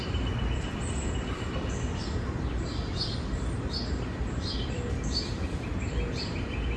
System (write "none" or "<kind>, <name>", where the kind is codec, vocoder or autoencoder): vocoder, BigVGAN v2